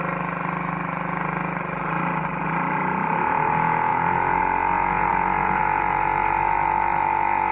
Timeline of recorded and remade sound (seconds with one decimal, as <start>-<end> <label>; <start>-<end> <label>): 0.0-3.9 recorded; 3.9-4.4 remade; 4.4-5.1 recorded; 5.1-5.6 remade; 5.6-7.5 recorded